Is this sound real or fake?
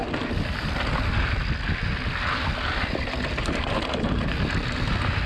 real